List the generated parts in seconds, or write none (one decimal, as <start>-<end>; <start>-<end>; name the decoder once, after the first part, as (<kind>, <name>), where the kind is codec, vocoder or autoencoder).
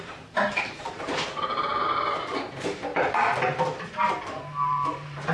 0.0-2.9 (vocoder, BigVGAN v2); 4.2-5.3